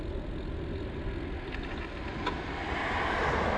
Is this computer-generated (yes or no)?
no